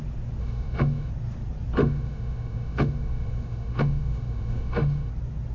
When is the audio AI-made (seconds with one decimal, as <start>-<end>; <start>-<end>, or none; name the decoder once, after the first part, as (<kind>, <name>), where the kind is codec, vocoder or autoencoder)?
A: 0.4-1.1 (autoencoder, DAC-VAE); 1.8-5.1